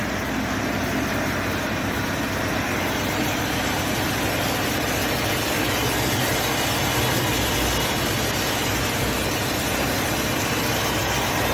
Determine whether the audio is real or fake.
real